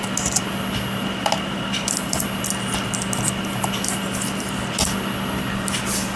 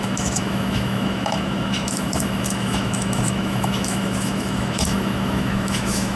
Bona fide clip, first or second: first